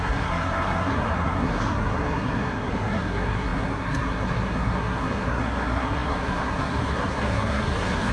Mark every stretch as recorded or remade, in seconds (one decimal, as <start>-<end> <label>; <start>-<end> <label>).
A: 0.0-8.1 remade